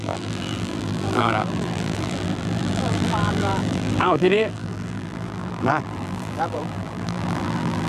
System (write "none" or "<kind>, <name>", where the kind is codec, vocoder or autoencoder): vocoder, BigVGAN v2